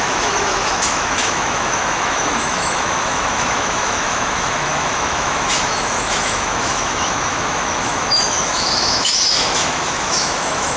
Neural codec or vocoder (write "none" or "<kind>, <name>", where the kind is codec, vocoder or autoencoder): autoencoder, DAC-VAE